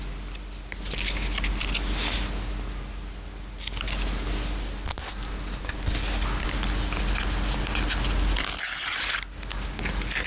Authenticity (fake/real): real